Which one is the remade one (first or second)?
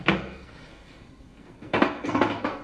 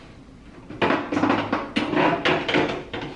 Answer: first